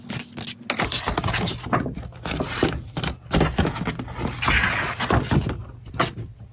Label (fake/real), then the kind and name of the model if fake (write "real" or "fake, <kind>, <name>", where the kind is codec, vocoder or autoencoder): real